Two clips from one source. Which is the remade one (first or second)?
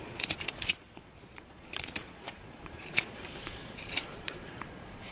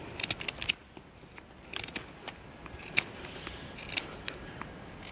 first